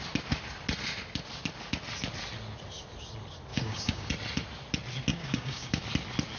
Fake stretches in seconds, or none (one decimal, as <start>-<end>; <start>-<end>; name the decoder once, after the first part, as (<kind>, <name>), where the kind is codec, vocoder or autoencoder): 3.5-4.1 (codec, DAC); 5.1-5.8